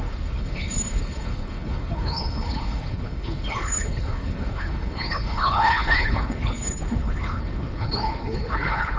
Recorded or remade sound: remade